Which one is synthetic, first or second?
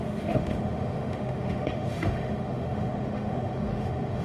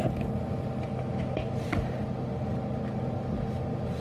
first